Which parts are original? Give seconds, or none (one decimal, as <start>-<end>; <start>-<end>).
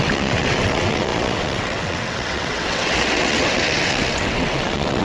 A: none